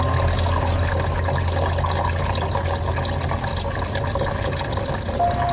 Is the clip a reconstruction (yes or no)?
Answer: no